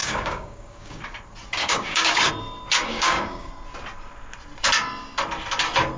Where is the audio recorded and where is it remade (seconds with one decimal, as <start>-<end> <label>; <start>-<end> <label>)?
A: 0.0-1.0 remade; 1.0-1.6 recorded; 1.6-2.3 remade; 2.3-2.9 recorded; 2.9-3.5 remade; 3.5-6.0 recorded